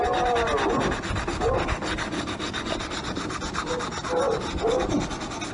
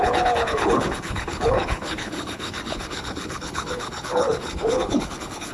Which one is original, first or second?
first